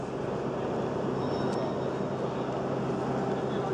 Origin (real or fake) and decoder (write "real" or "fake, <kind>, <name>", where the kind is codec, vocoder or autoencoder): real